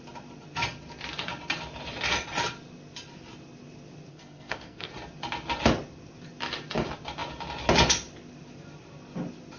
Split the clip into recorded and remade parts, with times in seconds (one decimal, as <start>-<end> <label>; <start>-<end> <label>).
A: 0.0-4.1 recorded; 4.1-4.9 remade; 4.9-9.6 recorded